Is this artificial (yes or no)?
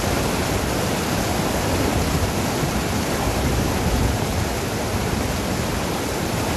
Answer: no